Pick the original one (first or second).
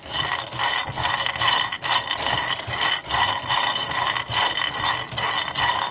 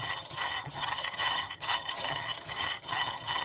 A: first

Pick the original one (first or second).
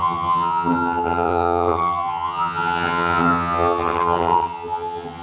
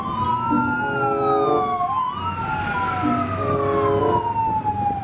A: second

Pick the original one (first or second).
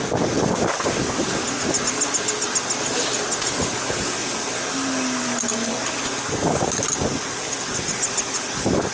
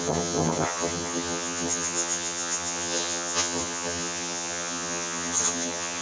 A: first